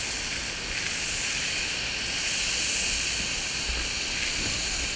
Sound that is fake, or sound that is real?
real